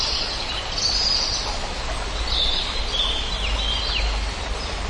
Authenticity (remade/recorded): recorded